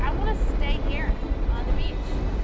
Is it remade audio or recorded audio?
recorded